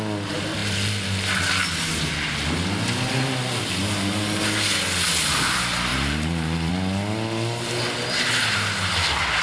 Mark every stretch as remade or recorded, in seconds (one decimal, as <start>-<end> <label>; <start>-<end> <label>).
0.0-5.9 recorded; 5.9-6.7 remade; 6.7-9.4 recorded